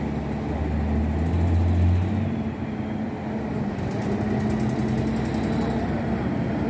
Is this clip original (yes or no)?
yes